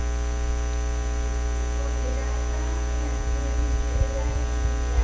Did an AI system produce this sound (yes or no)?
no